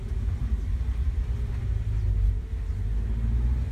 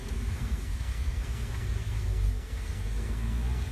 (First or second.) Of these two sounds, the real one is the first